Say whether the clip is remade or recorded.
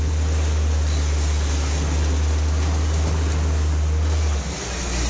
recorded